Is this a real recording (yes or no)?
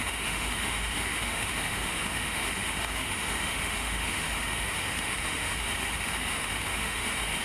no